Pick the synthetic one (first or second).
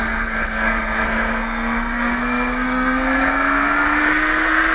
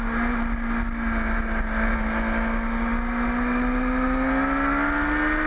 first